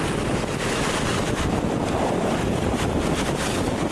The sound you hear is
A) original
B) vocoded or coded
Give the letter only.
A